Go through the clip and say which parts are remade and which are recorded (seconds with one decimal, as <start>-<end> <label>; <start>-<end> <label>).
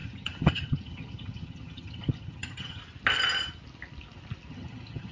0.0-2.8 remade; 2.8-4.5 recorded; 4.5-5.1 remade